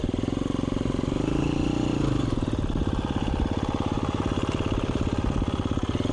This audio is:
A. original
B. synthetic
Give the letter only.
A